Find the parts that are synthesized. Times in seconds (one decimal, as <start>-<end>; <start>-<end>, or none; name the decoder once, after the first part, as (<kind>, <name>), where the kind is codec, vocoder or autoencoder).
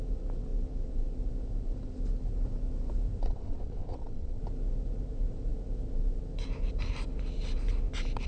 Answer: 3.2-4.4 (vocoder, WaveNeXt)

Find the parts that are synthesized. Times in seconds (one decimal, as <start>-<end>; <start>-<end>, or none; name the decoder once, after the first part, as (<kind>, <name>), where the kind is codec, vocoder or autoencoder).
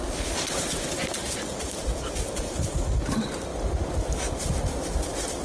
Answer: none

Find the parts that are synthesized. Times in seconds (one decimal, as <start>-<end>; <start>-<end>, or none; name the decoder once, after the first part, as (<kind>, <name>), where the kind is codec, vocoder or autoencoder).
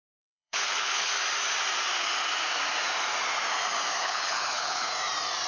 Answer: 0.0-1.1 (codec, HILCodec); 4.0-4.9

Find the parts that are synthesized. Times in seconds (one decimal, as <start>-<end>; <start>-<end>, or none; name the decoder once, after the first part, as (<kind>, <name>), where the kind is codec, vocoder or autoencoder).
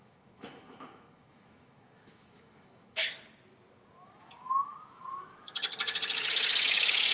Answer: 0.0-3.0 (autoencoder, DAC-VAE); 4.2-5.0; 6.3-7.1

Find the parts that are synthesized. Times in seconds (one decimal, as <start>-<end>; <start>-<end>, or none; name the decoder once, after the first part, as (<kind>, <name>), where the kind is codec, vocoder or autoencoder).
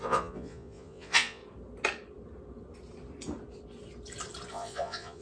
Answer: 0.0-1.4 (vocoder, Vocos); 4.5-5.2